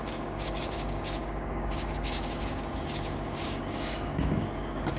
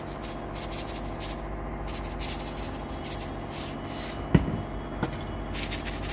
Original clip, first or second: second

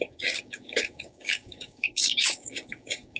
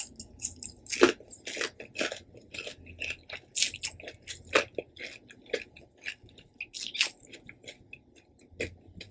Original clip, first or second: second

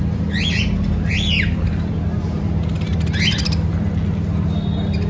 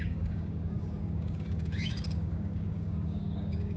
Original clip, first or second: first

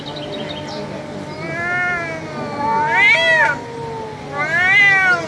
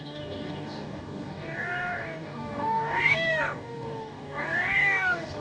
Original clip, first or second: first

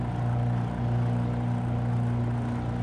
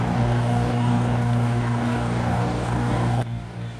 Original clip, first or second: first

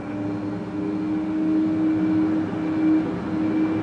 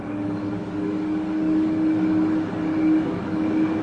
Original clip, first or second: first